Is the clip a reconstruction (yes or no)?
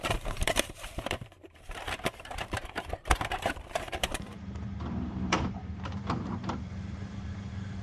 yes